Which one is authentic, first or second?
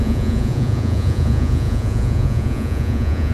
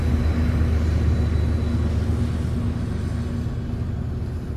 second